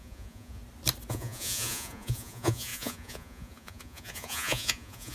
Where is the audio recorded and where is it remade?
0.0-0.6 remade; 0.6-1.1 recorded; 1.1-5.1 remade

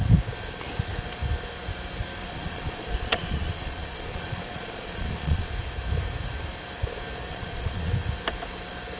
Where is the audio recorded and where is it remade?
0.0-2.2 recorded; 2.2-5.5 remade; 5.5-7.3 recorded; 7.3-7.9 remade; 7.9-9.0 recorded

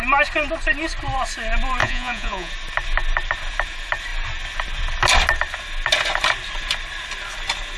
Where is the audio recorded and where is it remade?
0.0-1.8 recorded; 1.8-2.5 remade; 2.5-7.8 recorded

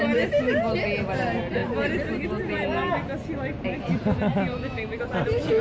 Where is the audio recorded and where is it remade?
0.0-5.6 recorded

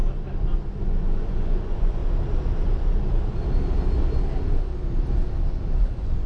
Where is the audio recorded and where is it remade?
0.0-0.8 recorded; 0.8-2.0 remade; 2.0-5.8 recorded; 5.8-6.3 remade